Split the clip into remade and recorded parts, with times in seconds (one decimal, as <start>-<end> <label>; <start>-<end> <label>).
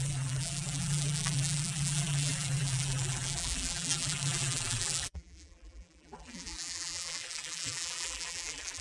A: 0.0-8.8 remade